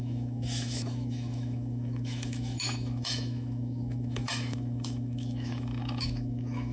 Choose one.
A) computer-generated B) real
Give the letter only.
A